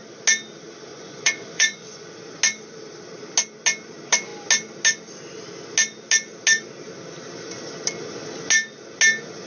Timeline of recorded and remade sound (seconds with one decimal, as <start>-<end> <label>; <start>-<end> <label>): 0.0-0.9 recorded; 0.9-2.1 remade; 2.1-9.5 recorded